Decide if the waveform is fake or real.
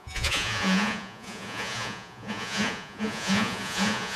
fake